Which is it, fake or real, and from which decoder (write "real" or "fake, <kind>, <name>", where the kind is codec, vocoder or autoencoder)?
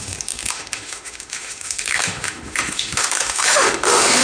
fake, autoencoder, DAC-VAE